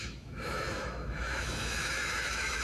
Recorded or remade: remade